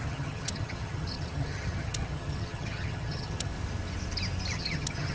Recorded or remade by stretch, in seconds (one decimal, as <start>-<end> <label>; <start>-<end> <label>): 0.0-3.5 remade; 3.5-4.5 recorded; 4.5-5.1 remade